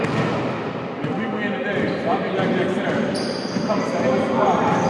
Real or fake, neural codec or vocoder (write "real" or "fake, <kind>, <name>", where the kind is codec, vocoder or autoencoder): real